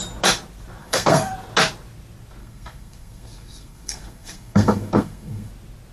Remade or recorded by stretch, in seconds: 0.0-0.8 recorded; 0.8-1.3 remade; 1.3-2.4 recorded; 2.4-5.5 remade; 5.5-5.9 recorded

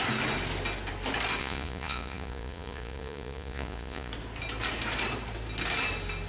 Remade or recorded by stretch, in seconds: 0.0-1.4 recorded; 1.4-4.1 remade; 4.1-6.3 recorded

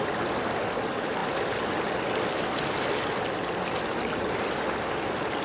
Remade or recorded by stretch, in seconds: 0.0-5.4 recorded

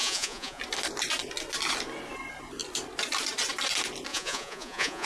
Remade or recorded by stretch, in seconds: 0.0-0.6 remade; 0.6-4.1 recorded; 4.1-5.1 remade

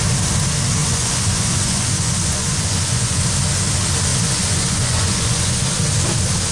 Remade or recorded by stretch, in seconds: 0.0-0.8 recorded; 0.8-3.3 remade; 3.3-4.1 recorded; 4.1-5.7 remade; 5.7-6.5 recorded